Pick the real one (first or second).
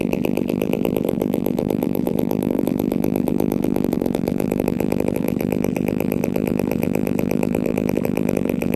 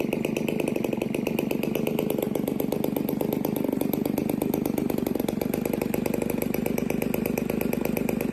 second